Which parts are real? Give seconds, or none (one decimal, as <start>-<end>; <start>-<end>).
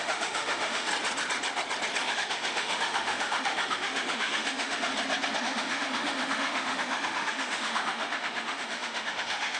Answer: 0.9-2.1; 4.9-5.4